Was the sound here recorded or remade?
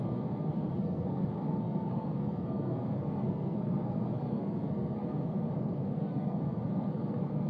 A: remade